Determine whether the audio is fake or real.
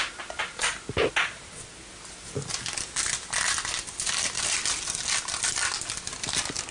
real